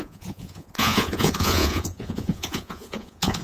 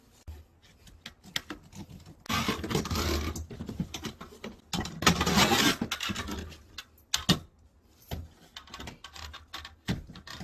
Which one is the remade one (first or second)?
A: first